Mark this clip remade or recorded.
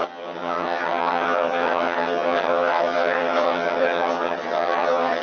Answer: remade